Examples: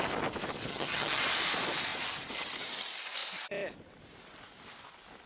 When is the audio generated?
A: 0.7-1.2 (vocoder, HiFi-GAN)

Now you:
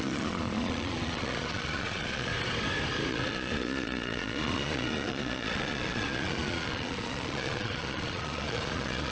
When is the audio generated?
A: 0.0-2.3 (vocoder, Vocos); 3.1-9.1

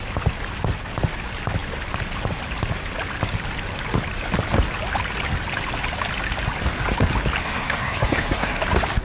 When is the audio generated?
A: 7.4-8.6 (codec, SNAC)

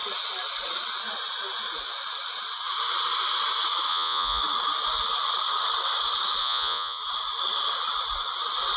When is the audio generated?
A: 3.9-4.4 (vocoder, Vocos); 6.4-7.0

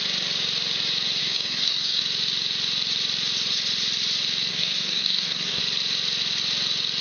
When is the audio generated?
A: 1.2-2.0 (codec, DAC); 4.5-5.6

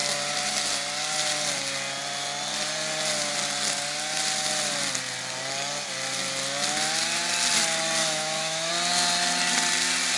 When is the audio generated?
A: 8.0-8.7 (autoencoder, DAC-VAE)